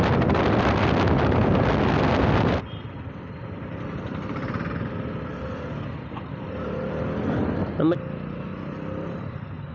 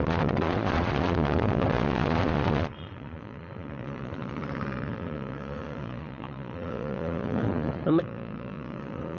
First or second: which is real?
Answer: first